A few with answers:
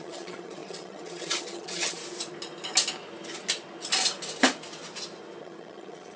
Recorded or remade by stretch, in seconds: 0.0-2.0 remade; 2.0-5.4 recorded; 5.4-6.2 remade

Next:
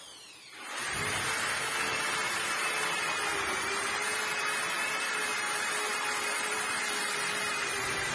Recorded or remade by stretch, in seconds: 0.0-5.9 recorded; 5.9-7.0 remade; 7.0-8.1 recorded

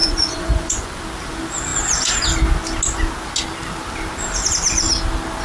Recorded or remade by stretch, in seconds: 0.0-1.0 remade; 1.0-5.4 recorded